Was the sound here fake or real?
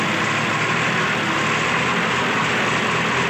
real